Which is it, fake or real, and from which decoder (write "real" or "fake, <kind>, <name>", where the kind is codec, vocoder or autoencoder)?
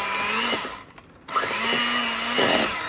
real